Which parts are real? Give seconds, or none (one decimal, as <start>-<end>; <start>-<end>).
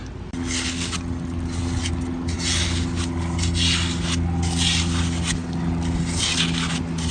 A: 0.0-7.1